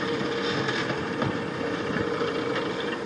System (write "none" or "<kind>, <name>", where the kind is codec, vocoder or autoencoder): vocoder, BigVGAN v2